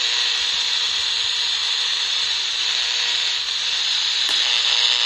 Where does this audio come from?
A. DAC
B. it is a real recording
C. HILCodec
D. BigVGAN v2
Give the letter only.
D